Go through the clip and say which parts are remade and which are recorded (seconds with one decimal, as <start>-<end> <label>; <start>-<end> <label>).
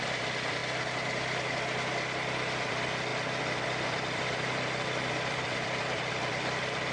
0.0-0.6 remade; 0.6-2.7 recorded; 2.7-6.9 remade